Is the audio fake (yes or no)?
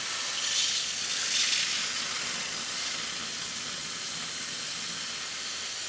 no